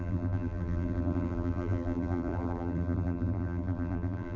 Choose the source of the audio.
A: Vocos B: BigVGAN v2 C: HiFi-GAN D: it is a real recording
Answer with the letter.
B